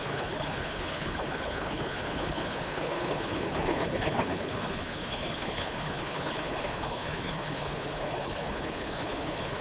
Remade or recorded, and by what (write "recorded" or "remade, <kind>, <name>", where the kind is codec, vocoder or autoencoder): remade, codec, HILCodec